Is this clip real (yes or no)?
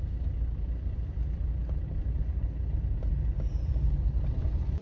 yes